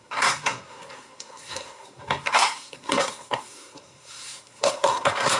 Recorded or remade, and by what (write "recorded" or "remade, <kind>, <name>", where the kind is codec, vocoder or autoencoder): remade, codec, SNAC